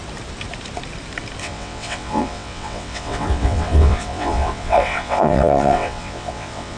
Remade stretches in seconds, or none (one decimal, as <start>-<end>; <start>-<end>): 1.4-6.8